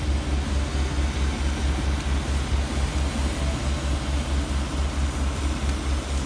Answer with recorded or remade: recorded